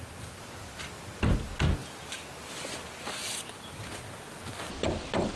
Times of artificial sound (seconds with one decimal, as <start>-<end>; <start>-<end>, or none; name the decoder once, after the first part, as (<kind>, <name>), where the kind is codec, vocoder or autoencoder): none